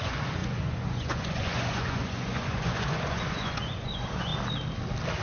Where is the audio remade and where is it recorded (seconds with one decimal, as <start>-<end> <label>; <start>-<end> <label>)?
0.0-4.3 remade; 4.3-5.2 recorded